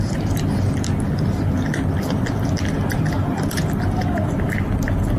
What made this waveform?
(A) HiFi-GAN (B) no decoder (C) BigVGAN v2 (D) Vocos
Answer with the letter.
B